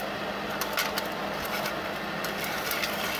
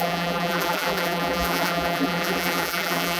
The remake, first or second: second